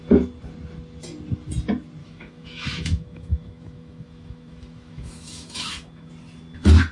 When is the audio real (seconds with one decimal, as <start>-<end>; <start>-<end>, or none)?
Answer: 0.0-2.0; 6.1-6.9